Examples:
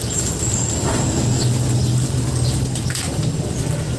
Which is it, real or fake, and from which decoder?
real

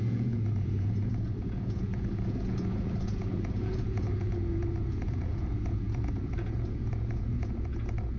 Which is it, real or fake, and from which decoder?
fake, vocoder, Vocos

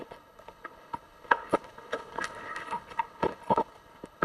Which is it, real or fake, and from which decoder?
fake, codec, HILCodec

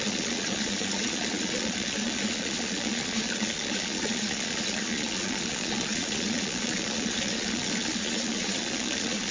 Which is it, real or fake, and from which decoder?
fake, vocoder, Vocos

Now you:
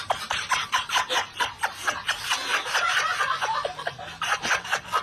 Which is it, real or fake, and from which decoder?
real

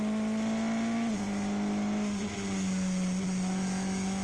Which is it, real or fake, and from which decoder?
real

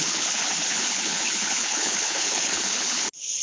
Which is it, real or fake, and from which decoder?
fake, codec, HILCodec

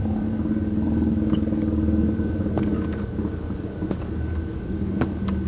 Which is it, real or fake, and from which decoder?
fake, codec, DAC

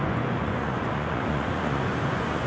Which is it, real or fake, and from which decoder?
fake, vocoder, Vocos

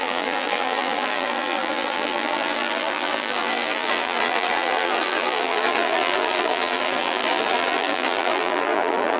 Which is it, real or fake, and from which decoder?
fake, vocoder, BigVGAN v2